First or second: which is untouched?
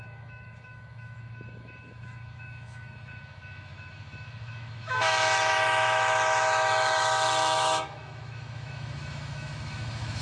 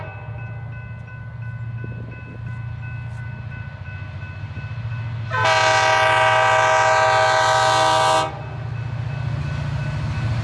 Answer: second